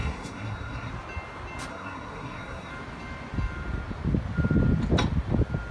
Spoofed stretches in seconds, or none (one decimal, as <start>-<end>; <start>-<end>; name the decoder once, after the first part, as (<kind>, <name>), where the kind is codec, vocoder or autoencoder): 0.0-0.9 (codec, SNAC); 1.7-2.7